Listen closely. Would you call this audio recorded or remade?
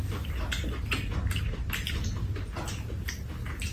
recorded